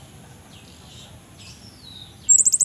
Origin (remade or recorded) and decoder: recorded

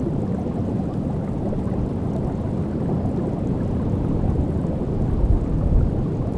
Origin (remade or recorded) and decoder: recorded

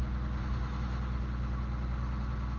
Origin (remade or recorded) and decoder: recorded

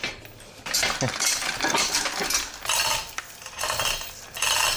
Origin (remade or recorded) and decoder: recorded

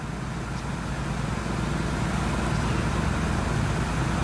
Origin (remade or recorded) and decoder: recorded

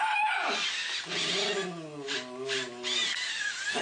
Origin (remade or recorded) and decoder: recorded